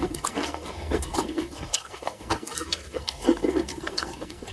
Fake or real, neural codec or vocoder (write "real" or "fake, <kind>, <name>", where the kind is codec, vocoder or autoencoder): fake, codec, SNAC